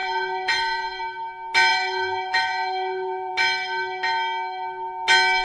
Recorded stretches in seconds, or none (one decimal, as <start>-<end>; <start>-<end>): 1.0-1.7; 3.3-5.4